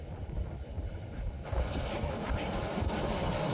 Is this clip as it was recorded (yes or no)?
yes